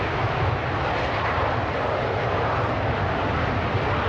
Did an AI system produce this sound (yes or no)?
no